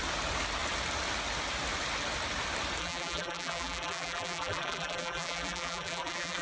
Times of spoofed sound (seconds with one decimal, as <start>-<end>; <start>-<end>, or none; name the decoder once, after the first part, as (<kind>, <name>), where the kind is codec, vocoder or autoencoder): 2.8-6.4 (vocoder, BigVGAN v2)